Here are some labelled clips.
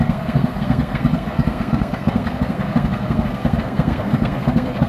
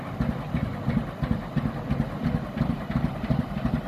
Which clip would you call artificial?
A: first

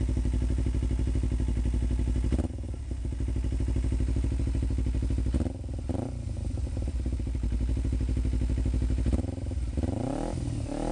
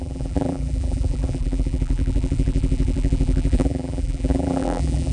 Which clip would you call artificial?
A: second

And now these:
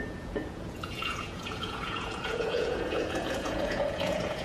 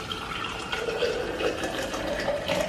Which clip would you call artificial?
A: first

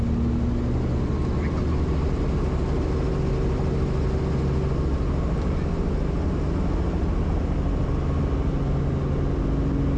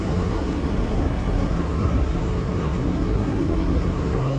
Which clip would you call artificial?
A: second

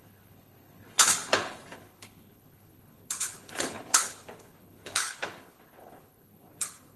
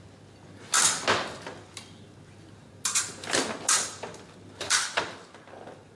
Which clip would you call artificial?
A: first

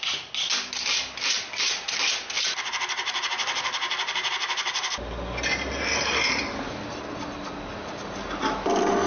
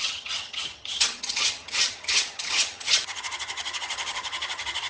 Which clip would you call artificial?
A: second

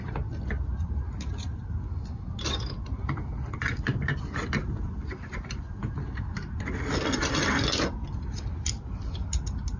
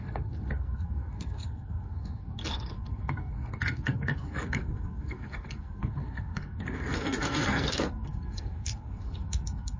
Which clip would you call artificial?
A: second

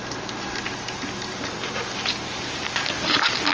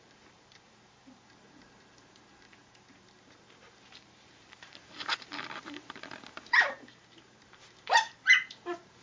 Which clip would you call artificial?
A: second